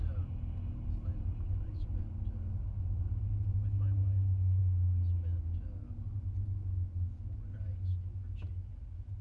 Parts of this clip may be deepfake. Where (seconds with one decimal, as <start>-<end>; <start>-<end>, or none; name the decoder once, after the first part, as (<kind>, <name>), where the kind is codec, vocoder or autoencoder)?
none

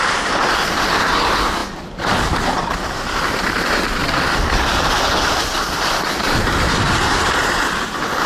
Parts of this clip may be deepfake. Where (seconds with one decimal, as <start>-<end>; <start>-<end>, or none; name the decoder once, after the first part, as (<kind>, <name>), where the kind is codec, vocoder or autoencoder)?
4.0-7.6 (vocoder, BigVGAN v2)

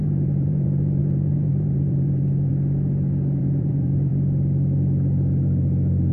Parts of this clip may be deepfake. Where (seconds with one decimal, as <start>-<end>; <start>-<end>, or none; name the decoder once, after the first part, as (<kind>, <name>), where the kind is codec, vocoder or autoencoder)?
0.0-2.5 (vocoder, BigVGAN v2); 3.4-4.1

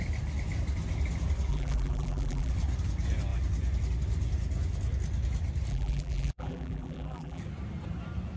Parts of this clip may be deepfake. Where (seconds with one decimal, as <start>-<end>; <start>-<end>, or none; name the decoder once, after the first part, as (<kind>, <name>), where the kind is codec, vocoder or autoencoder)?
1.5-2.5 (vocoder, BigVGAN v2); 5.7-7.4